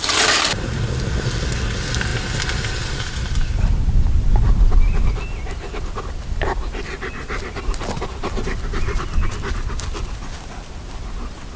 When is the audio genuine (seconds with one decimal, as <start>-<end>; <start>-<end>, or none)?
0.0-11.6